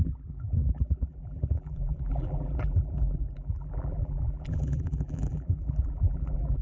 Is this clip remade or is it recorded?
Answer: remade